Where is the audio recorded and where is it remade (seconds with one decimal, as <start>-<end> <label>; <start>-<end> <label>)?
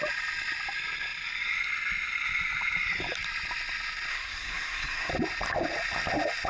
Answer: 0.0-4.1 recorded; 4.1-5.1 remade; 5.1-6.5 recorded